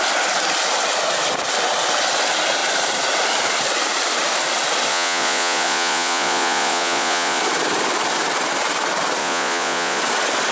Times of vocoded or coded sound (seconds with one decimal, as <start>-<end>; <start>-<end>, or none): 4.9-7.4; 9.2-10.0